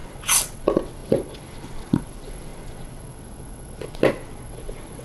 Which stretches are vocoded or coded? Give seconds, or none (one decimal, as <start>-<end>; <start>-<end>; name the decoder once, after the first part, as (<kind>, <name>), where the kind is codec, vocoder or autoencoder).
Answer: 0.0-5.0 (vocoder, WaveNeXt)